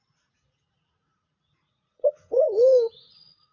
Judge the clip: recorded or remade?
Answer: remade